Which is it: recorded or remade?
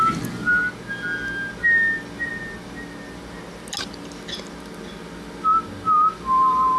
recorded